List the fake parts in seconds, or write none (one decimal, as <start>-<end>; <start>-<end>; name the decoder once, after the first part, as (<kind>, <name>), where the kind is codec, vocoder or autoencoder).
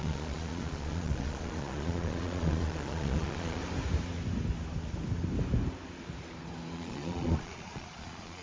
0.0-3.6 (vocoder, Vocos); 6.7-8.4